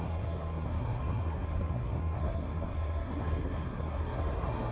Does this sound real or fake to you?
fake